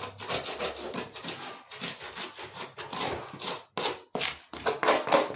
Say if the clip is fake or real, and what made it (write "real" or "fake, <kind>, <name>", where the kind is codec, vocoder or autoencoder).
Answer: real